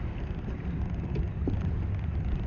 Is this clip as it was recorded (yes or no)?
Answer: yes